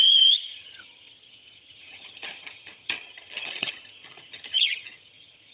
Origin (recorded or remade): remade